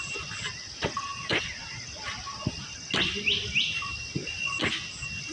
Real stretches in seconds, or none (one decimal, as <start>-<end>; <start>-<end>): 0.0-5.3